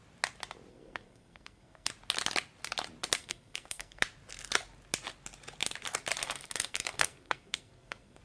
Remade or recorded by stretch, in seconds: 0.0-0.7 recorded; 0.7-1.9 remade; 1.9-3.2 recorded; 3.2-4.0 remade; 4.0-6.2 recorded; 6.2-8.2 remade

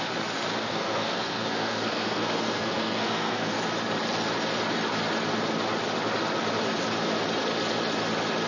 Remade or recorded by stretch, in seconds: 0.0-0.7 recorded; 0.7-3.5 remade; 3.5-8.5 recorded

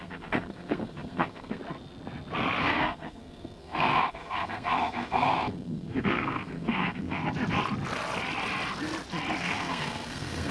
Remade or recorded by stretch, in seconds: 0.0-1.6 remade; 1.6-2.6 recorded; 2.6-7.2 remade; 7.2-9.4 recorded; 9.4-10.5 remade

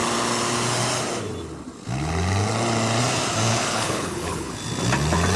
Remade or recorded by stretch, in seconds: 0.0-3.5 recorded; 3.5-4.5 remade; 4.5-5.4 recorded